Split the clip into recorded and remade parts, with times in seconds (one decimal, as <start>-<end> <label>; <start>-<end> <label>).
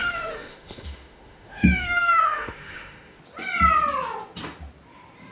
0.0-3.2 remade; 3.2-5.3 recorded